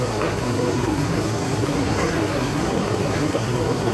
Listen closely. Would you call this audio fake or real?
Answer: fake